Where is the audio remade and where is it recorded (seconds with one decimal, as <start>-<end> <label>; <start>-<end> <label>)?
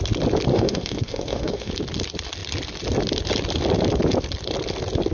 0.0-0.5 recorded; 0.5-1.7 remade; 1.7-5.1 recorded